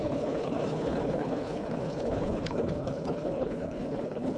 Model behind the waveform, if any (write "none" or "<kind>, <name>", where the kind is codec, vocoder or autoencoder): codec, HILCodec